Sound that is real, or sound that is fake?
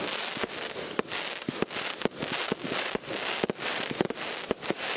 real